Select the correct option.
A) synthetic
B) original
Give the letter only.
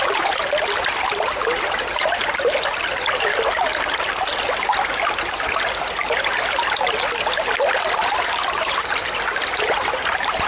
B